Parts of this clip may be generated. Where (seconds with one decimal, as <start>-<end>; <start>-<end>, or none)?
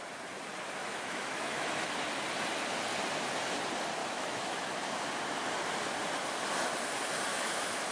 0.8-1.9; 4.0-4.8; 7.3-7.9